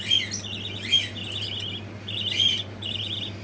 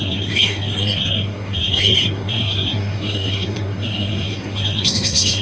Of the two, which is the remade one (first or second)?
second